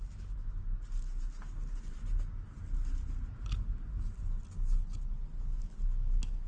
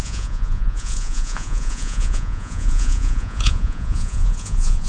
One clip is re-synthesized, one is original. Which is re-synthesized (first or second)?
second